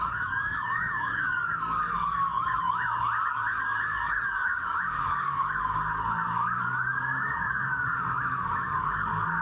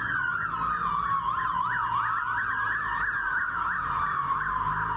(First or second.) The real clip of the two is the second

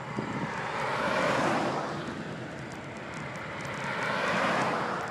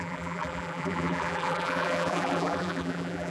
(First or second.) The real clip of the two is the first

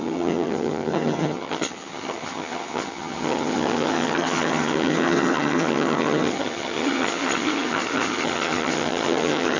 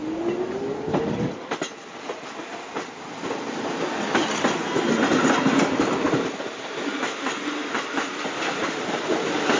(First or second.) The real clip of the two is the second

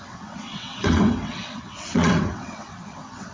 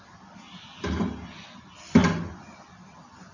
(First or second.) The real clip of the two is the second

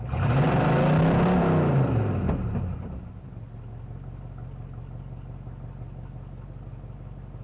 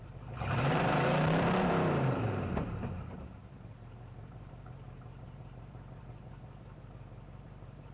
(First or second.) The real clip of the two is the first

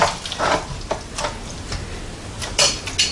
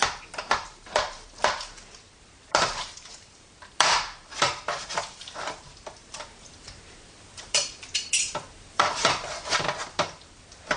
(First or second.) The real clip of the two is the first